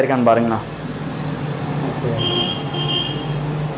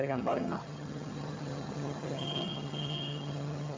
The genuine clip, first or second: first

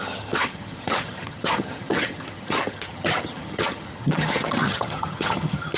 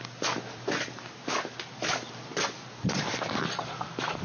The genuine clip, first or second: second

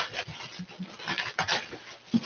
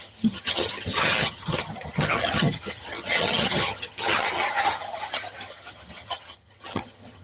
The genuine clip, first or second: first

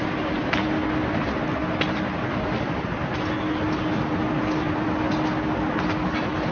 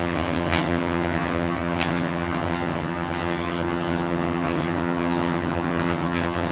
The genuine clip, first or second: first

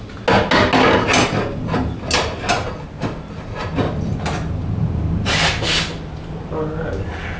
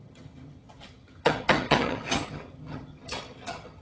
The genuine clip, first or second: first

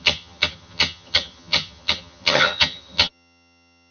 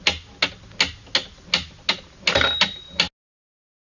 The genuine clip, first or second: second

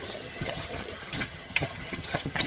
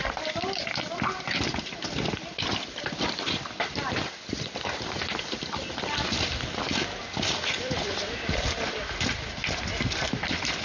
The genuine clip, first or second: second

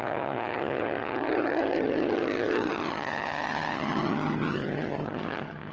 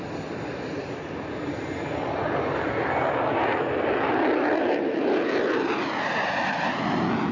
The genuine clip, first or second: second